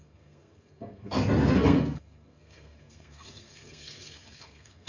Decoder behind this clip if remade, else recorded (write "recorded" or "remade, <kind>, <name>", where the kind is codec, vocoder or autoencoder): remade, codec, SNAC